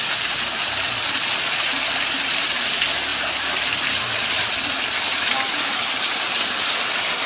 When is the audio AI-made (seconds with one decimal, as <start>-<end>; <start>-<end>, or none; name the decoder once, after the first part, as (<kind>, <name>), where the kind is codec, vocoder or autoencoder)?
none